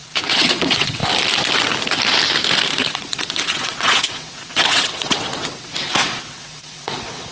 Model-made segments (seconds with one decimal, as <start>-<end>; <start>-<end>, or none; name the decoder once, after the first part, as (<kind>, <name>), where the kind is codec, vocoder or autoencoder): 0.0-1.0 (vocoder, WaveNeXt); 2.9-7.3